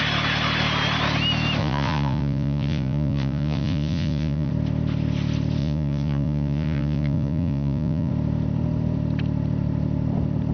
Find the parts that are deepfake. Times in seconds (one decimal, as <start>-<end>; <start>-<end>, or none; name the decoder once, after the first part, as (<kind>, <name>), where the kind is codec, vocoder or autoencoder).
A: 1.6-4.5 (vocoder, Vocos); 5.6-8.1